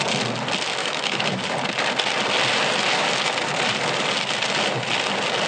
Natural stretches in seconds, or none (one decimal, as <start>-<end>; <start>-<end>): 0.0-0.8; 1.4-5.5